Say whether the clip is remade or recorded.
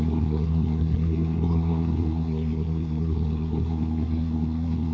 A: remade